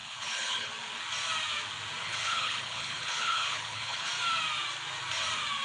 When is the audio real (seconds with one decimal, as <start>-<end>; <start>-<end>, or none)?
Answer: 0.7-2.0; 4.1-5.6